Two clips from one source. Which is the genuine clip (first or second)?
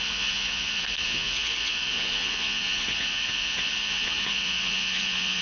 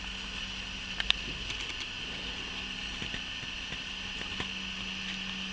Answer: second